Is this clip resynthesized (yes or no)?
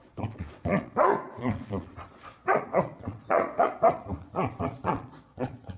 yes